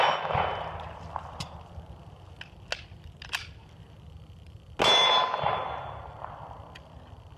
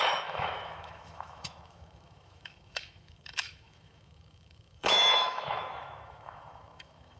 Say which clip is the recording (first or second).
first